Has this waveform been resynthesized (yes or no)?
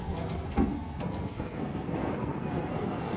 yes